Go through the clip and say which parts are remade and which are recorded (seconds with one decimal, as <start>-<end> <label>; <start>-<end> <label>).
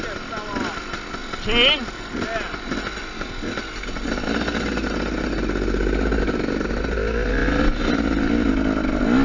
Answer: 0.0-7.4 recorded; 7.4-8.5 remade; 8.5-9.2 recorded